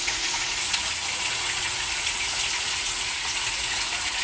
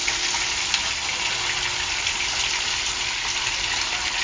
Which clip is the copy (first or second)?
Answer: first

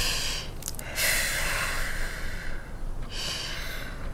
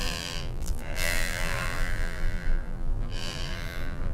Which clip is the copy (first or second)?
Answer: second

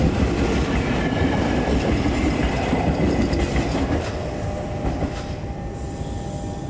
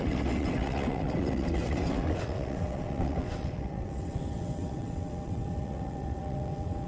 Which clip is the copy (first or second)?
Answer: second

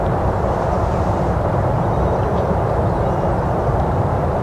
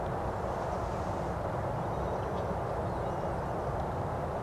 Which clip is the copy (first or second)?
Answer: first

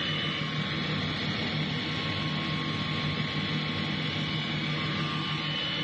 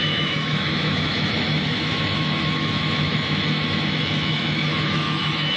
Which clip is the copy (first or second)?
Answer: second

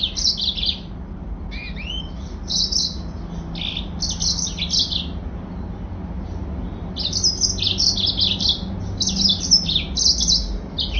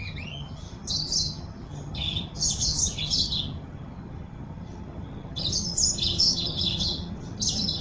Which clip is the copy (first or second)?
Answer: second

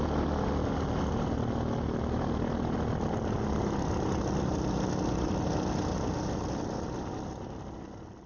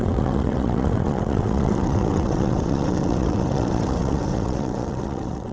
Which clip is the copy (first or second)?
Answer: second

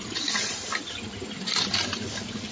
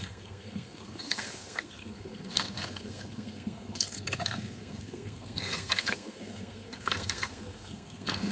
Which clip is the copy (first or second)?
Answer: second